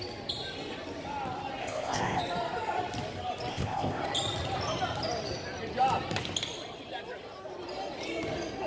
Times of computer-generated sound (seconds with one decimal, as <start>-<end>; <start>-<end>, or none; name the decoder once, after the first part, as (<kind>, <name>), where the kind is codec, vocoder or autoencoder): 1.6-2.2 (codec, ZipCodec); 3.5-4.0